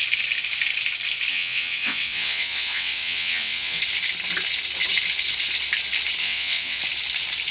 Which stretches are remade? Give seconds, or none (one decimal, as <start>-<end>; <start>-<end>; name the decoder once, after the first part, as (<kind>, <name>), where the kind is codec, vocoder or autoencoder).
1.3-3.8 (vocoder, WaveNeXt); 6.2-6.8